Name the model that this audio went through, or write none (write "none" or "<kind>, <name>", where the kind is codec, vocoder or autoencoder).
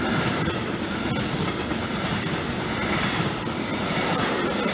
none